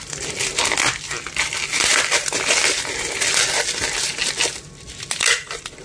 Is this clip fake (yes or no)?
no